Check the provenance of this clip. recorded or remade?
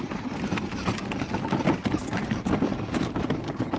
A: recorded